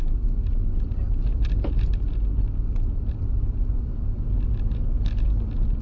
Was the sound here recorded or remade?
recorded